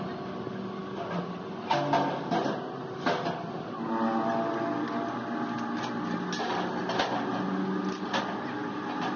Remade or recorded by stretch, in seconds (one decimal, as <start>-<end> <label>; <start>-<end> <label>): 0.0-9.2 recorded